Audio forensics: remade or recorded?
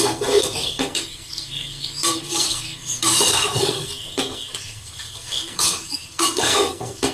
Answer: remade